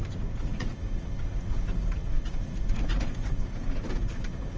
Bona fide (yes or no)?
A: no